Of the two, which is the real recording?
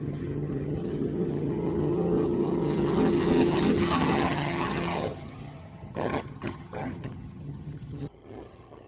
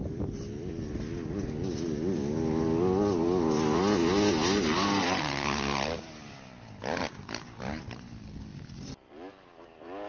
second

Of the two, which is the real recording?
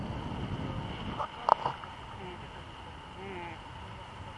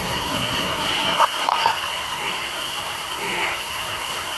first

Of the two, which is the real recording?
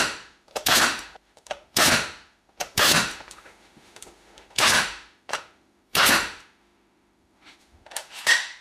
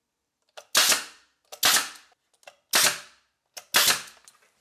second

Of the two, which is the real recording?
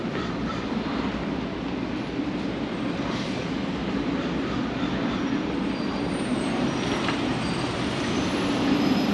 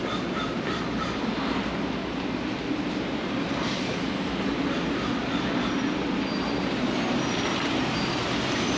second